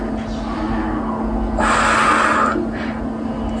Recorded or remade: recorded